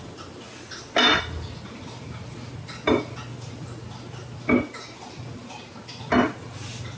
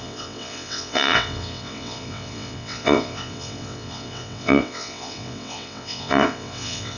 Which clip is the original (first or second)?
first